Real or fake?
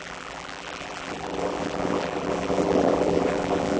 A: fake